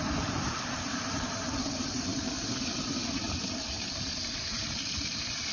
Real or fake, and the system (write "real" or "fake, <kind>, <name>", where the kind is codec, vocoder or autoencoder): fake, vocoder, BigVGAN v2